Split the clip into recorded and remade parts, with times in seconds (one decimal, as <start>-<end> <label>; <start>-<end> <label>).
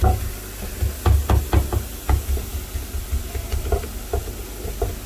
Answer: 0.0-5.1 recorded